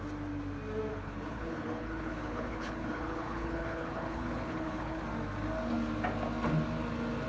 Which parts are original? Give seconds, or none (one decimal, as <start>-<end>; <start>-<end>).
0.0-0.9; 5.0-7.3